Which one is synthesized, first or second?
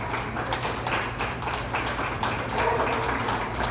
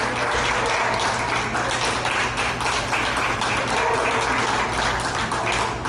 first